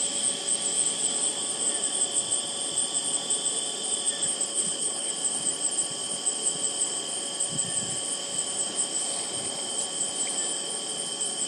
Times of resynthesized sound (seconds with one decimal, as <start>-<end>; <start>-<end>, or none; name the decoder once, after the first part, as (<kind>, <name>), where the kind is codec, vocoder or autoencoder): 4.5-5.1 (codec, HILCodec)

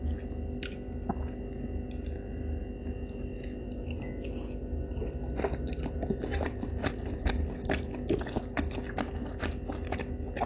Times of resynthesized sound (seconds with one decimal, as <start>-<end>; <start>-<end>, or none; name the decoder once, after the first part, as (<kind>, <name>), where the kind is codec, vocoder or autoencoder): none

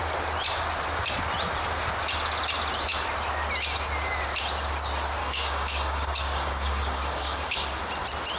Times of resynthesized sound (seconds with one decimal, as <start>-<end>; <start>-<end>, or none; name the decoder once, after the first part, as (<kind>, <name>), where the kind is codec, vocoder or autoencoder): 5.2-7.8 (codec, DAC)